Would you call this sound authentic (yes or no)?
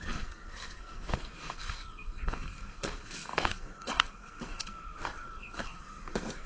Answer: no